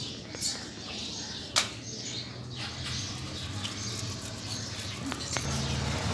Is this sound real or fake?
real